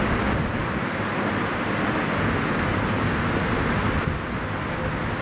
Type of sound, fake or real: real